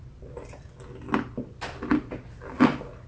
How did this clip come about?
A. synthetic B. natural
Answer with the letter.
B